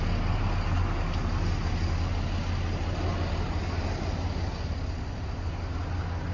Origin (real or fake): real